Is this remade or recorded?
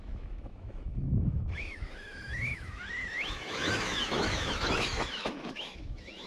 remade